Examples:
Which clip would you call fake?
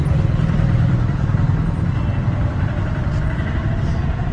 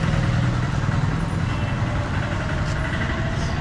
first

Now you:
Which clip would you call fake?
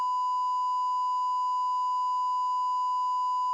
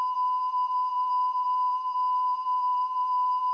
second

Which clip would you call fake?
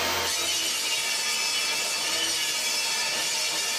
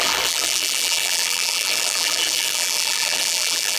second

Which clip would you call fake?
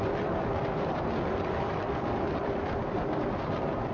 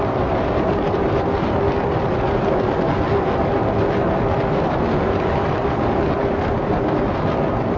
first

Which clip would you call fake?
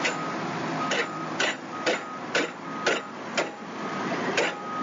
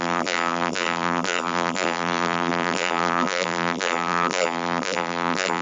second